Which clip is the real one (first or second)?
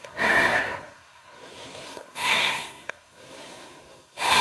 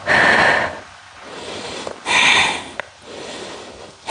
second